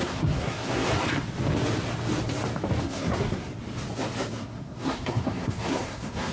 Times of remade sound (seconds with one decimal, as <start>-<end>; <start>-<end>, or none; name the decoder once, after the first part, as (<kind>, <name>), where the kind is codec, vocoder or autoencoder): 0.0-0.9 (codec, SNAC); 2.8-3.5; 4.3-6.3

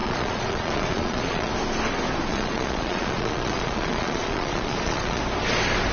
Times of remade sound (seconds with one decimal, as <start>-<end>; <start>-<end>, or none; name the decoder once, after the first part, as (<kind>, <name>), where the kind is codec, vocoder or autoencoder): 0.0-1.5 (vocoder, Vocos); 2.3-5.2

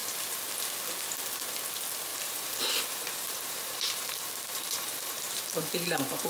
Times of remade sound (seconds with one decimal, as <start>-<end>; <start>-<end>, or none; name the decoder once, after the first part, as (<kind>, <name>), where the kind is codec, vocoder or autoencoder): 2.1-5.7 (vocoder, BigVGAN v2)

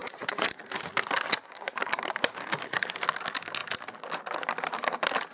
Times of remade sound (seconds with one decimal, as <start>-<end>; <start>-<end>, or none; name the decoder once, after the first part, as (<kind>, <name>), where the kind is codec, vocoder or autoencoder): 0.0-0.6 (vocoder, Vocos)

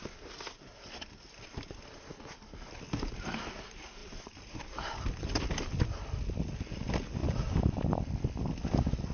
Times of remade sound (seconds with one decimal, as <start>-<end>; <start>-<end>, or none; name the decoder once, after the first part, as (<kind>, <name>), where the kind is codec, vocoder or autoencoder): 4.0-5.0 (vocoder, BigVGAN v2)

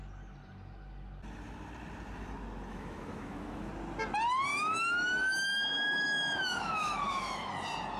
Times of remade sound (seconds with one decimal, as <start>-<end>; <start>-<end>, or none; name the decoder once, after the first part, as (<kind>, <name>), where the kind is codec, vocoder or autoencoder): 2.7-3.7 (autoencoder, DAC-VAE); 4.5-7.5